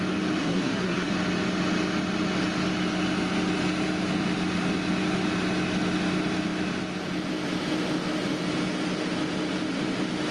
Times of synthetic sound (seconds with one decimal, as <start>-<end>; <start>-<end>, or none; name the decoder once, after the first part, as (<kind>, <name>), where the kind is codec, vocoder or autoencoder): 0.4-1.1 (codec, SNAC)